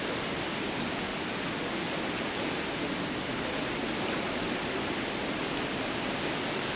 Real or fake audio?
real